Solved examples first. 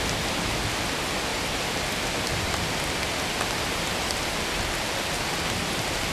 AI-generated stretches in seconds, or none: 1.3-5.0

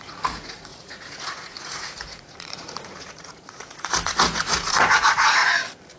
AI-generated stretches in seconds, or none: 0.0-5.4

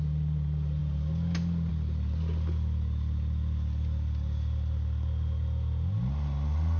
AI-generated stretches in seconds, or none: none

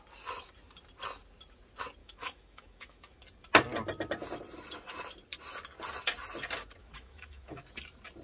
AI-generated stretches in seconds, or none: 2.0-3.2; 6.8-7.6

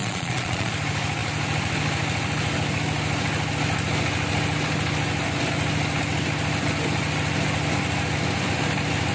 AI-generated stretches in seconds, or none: 0.0-0.7

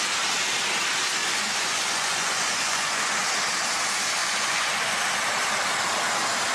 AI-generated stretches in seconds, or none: 1.2-3.1; 4.2-5.0

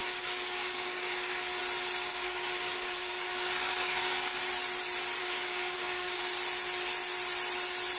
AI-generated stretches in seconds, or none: 0.0-1.6; 2.1-4.4; 5.2-6.2

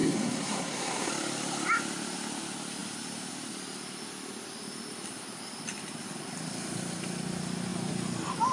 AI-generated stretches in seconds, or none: 0.0-1.1